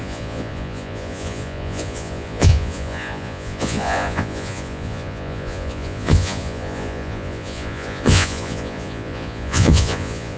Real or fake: fake